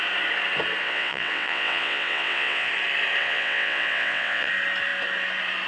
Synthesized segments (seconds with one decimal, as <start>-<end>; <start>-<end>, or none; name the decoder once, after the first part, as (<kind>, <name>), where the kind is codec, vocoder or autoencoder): 0.8-2.7 (vocoder, WaveNeXt); 3.2-4.5